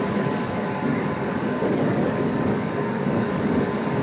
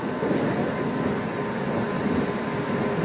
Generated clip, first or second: first